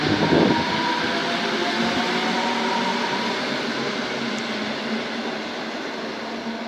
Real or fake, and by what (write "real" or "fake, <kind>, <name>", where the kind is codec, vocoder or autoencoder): real